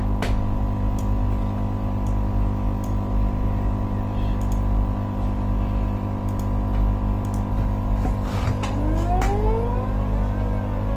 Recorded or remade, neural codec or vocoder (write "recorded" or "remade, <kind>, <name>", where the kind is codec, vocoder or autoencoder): recorded